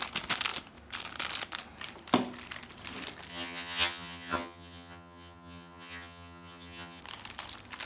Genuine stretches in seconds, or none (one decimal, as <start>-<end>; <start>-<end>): 0.0-3.3; 7.0-7.9